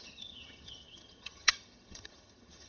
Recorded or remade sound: remade